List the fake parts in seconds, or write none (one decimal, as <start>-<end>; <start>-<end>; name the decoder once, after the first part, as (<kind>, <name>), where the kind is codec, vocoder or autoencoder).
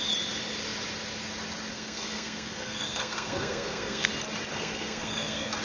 1.7-4.1 (codec, SNAC); 4.5-5.6